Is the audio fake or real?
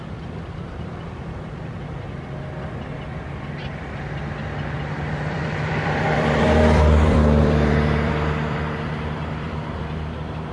fake